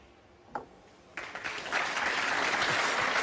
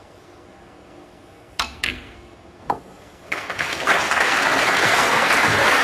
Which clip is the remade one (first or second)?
second